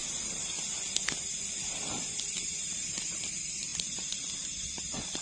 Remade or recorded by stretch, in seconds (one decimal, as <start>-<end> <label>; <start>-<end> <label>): 0.0-5.2 recorded